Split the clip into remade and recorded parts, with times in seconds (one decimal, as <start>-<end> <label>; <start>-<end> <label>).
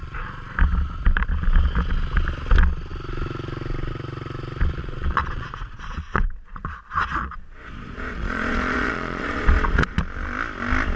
0.0-4.8 recorded; 4.8-10.0 remade; 10.0-11.0 recorded